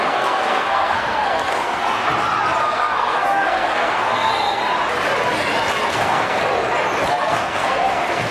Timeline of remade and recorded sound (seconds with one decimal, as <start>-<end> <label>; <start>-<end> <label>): 0.0-2.1 remade; 2.1-2.6 recorded; 2.6-4.6 remade; 4.6-5.9 recorded; 5.9-6.4 remade; 6.4-7.1 recorded; 7.1-8.3 remade